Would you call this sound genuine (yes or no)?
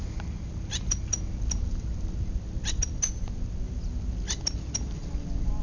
yes